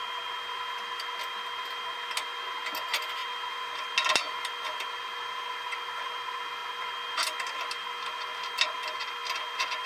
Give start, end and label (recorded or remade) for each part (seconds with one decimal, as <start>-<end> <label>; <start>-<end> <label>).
0.0-9.9 recorded